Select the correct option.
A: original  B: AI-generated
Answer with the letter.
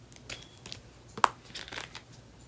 A